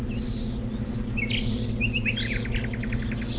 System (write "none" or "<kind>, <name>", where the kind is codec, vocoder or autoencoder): none